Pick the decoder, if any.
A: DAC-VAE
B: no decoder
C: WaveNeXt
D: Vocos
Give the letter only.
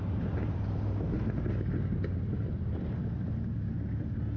B